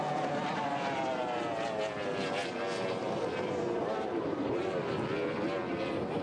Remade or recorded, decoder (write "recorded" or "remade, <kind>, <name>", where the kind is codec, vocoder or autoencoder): recorded